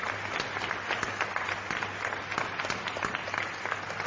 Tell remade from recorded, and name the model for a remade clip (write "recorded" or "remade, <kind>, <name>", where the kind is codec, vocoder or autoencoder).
recorded